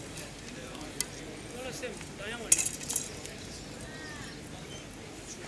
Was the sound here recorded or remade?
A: recorded